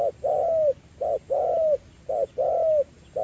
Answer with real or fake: real